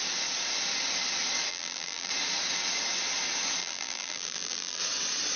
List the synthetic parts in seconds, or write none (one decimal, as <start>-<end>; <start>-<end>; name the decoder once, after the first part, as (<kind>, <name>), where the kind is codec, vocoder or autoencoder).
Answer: 1.5-2.1 (vocoder, BigVGAN v2); 3.6-4.8